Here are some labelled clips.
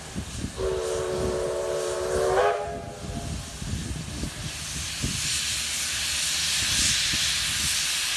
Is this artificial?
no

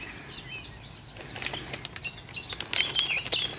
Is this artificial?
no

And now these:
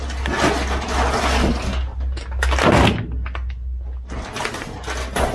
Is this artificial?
no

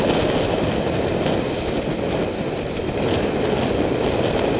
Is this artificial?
no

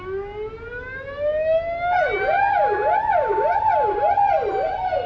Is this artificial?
no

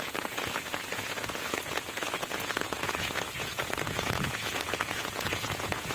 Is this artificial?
yes